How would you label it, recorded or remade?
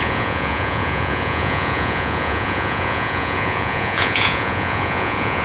remade